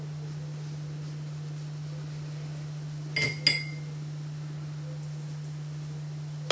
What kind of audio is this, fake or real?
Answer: real